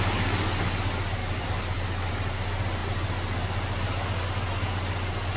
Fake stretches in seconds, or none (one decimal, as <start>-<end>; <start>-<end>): 1.2-2.1